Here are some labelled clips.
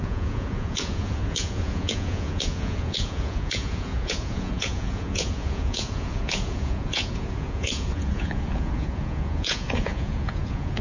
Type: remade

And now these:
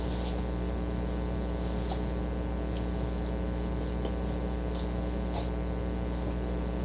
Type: recorded